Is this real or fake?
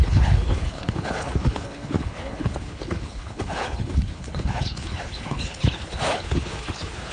fake